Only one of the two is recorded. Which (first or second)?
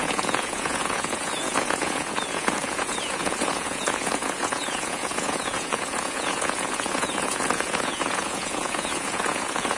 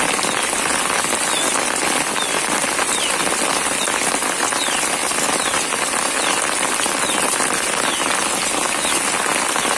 second